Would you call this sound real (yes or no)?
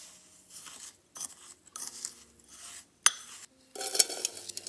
yes